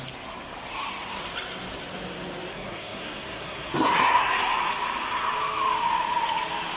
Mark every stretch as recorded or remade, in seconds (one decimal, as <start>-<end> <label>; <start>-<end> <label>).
0.0-2.5 recorded; 2.5-4.3 remade; 4.3-6.8 recorded